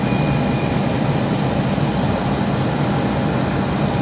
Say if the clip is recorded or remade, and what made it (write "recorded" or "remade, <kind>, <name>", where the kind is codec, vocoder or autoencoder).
recorded